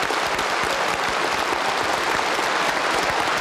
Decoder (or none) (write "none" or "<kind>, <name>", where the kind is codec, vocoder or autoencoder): none